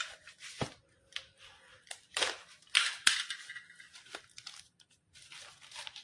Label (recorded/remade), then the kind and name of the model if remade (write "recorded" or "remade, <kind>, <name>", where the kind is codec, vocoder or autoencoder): recorded